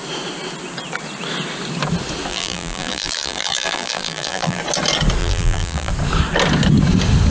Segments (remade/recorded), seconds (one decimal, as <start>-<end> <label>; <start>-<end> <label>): 0.0-2.3 recorded; 2.3-4.6 remade; 4.6-5.2 recorded; 5.2-5.9 remade; 5.9-7.3 recorded